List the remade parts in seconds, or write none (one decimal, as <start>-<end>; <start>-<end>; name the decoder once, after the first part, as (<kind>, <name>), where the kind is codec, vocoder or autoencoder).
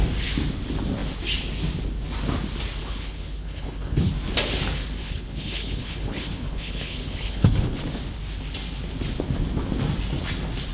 2.8-4.1 (codec, HILCodec); 5.0-7.8